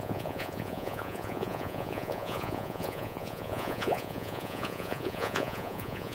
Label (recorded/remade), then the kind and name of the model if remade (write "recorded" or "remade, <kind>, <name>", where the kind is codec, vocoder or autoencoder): remade, vocoder, Vocos